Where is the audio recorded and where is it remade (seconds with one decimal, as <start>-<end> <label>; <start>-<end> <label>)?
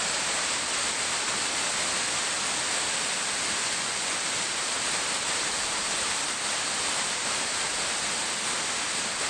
0.0-3.6 recorded; 3.6-4.2 remade; 4.2-9.3 recorded